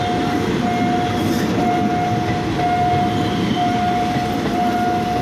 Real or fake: real